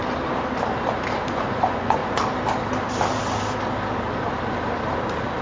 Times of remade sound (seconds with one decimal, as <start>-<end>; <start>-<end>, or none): 1.3-2.0